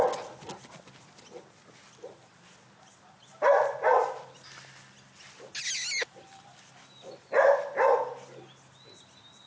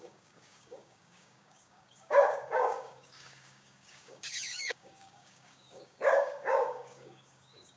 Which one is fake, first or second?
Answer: second